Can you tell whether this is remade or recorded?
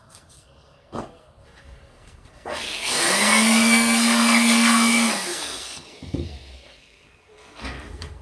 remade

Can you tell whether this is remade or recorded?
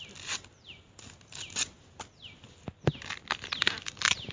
recorded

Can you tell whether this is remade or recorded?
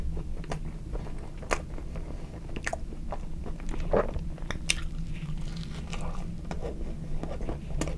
recorded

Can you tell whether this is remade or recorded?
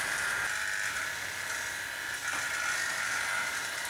recorded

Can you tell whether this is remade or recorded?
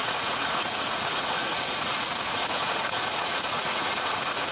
remade